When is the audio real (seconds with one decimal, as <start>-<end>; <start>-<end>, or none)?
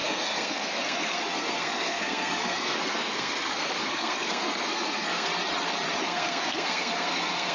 5.3-6.0